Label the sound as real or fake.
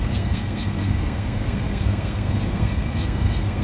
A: fake